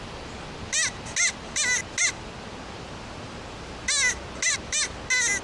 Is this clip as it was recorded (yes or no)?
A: yes